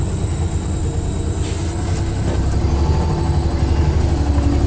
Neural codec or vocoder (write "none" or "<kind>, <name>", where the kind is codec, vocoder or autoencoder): none